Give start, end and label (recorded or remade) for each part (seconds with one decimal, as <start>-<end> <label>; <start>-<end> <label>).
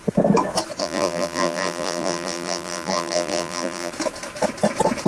0.0-0.8 recorded; 0.8-3.9 remade; 3.9-5.1 recorded